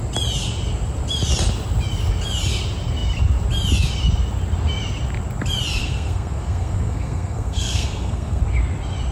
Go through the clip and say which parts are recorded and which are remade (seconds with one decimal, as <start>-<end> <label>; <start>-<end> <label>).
0.0-5.8 recorded; 5.8-8.4 remade; 8.4-9.1 recorded